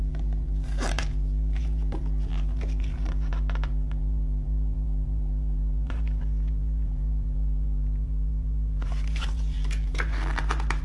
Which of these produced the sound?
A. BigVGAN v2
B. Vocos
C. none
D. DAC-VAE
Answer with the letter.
A